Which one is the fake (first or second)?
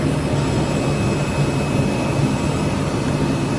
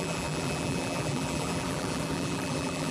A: second